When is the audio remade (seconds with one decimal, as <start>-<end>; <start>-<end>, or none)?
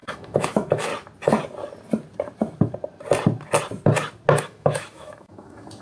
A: 0.0-0.9; 4.4-5.8